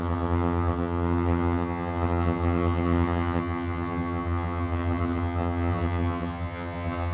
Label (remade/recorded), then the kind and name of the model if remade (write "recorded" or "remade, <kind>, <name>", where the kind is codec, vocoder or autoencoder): remade, vocoder, HiFi-GAN